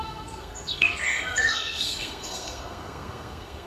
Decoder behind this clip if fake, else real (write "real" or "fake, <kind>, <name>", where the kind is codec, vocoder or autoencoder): fake, codec, SNAC